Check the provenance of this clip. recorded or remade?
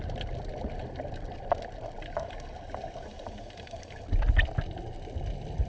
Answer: recorded